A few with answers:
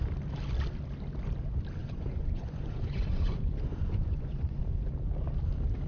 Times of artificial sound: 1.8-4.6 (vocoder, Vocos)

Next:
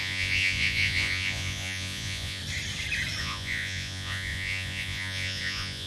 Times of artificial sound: 0.0-2.4 (vocoder, Vocos); 3.2-5.9